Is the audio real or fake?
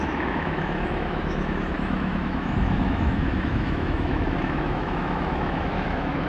fake